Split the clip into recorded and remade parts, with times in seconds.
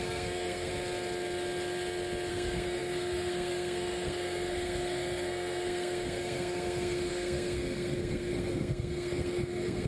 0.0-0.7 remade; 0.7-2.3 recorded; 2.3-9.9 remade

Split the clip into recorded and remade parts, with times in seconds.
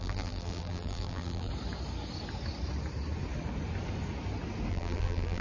0.0-1.5 remade; 1.5-4.7 recorded; 4.7-5.4 remade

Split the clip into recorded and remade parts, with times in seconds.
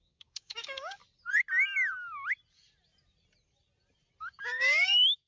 0.0-1.0 remade; 1.0-4.2 recorded; 4.2-5.3 remade